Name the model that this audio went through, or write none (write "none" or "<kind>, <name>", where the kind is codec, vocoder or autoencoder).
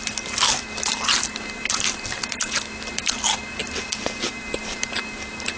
none